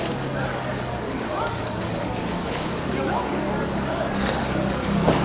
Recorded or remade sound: remade